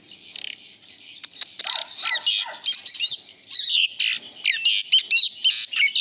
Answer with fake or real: real